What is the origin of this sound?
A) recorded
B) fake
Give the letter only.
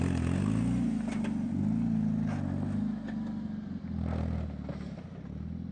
A